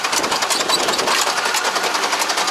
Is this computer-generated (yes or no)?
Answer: no